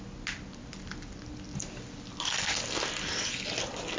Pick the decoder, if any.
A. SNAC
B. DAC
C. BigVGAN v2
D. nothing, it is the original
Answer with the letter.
D